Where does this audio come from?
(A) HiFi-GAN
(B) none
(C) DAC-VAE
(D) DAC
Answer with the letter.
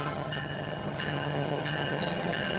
A